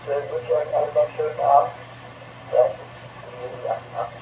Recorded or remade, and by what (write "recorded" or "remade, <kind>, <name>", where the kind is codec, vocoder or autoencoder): recorded